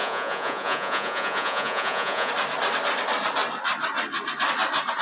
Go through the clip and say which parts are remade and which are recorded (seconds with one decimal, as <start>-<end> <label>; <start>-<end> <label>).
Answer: 0.0-2.3 remade; 2.3-5.0 recorded